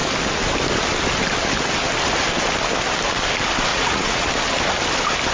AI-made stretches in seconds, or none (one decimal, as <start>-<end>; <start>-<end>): 3.7-4.3